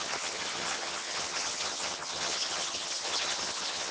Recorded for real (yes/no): no